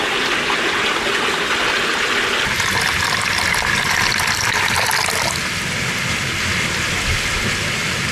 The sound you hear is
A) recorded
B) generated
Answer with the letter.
A